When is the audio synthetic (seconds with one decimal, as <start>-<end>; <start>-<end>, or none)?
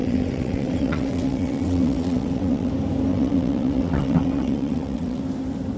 0.0-2.7; 3.1-5.2